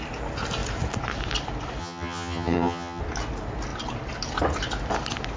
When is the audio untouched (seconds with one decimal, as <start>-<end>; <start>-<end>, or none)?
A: 0.0-1.8; 3.0-5.4